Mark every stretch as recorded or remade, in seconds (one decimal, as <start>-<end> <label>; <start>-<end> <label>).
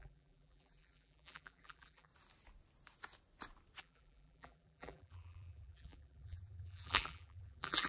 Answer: 0.0-2.1 remade; 2.1-3.8 recorded; 3.8-7.9 remade